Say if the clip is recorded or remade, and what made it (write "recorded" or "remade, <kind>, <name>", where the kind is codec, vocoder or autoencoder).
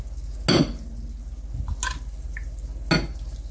recorded